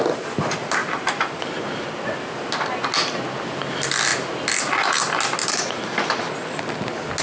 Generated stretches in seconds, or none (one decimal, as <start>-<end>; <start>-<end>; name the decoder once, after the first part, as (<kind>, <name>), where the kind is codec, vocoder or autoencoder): 0.8-1.5 (vocoder, BigVGAN v2); 5.4-6.6